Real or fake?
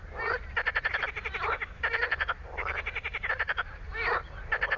fake